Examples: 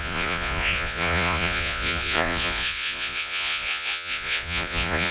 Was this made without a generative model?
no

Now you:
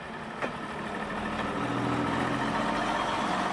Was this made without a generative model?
yes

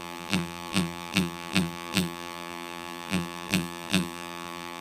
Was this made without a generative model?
no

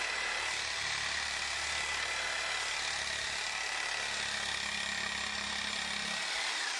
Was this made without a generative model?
yes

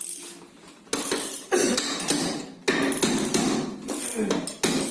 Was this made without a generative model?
yes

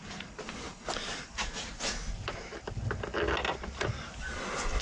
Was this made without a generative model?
yes